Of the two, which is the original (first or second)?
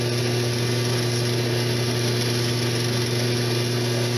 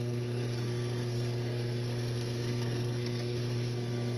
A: first